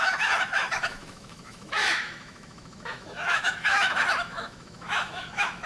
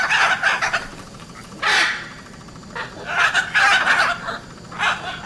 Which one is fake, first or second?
first